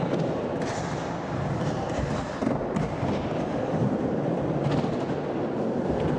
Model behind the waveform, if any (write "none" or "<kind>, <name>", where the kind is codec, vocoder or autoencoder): none